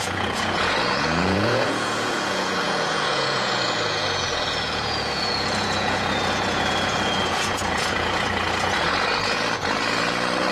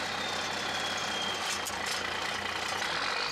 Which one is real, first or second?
second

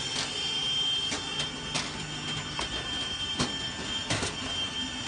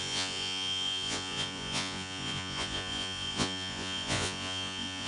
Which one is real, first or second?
first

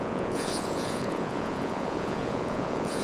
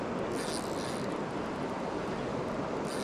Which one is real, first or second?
second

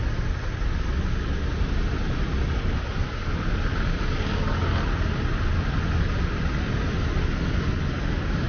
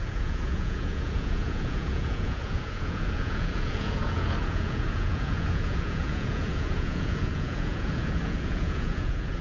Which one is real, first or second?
first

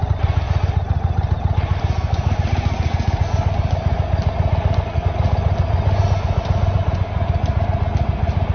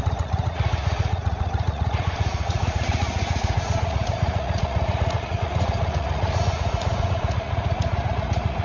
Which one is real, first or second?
first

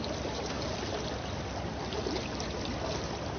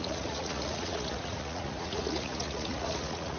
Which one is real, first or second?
first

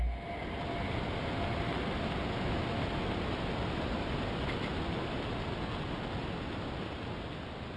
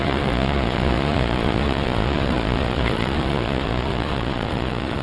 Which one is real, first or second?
first